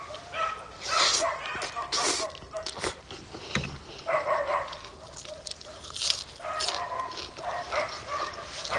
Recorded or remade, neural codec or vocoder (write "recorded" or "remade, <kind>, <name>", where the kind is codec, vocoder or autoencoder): recorded